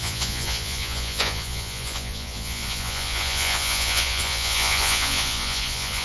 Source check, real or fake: fake